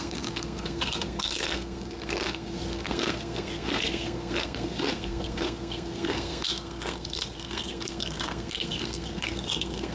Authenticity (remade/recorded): remade